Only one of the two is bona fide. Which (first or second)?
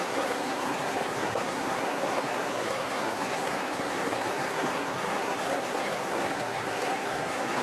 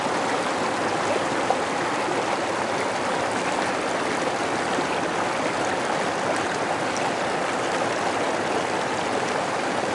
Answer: second